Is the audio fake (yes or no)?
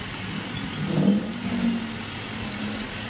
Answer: no